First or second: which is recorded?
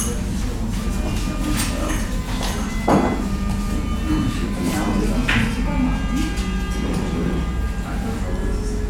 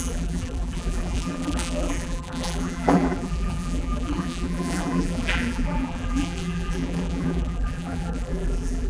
first